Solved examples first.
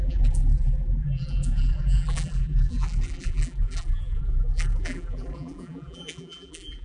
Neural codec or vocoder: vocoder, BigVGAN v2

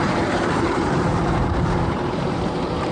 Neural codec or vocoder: vocoder, BigVGAN v2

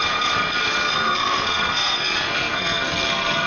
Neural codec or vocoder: codec, SNAC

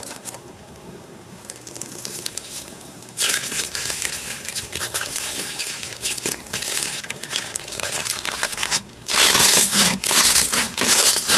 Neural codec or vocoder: codec, SNAC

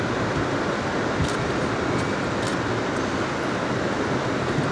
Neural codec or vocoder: none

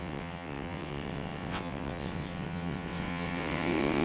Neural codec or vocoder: vocoder, WaveNeXt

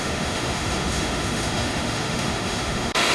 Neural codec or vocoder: autoencoder, DAC-VAE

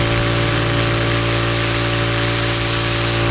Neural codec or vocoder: none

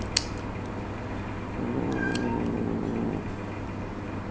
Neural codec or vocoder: none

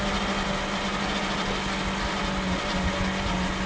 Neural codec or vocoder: none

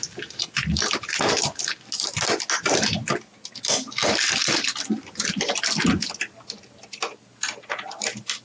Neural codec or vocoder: none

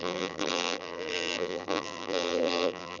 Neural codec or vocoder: vocoder, BigVGAN v2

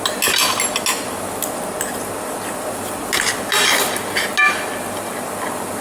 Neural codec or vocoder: none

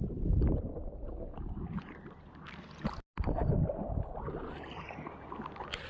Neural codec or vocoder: none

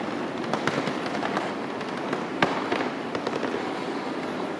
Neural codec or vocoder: vocoder, BigVGAN v2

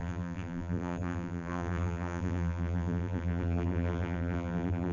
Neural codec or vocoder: vocoder, BigVGAN v2